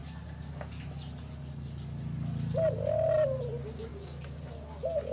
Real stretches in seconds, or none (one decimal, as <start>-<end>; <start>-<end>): 0.0-3.9; 4.4-5.1